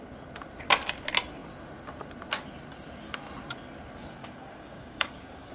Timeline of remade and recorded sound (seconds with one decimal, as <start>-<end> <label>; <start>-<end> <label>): 0.0-4.2 recorded; 4.2-5.5 remade